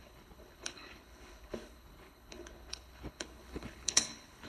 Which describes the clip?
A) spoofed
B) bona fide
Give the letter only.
A